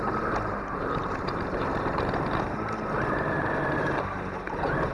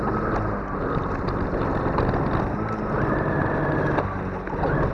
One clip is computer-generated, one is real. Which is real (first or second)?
second